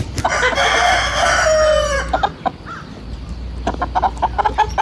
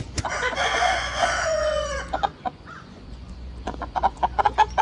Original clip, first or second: first